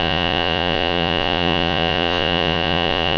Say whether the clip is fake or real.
fake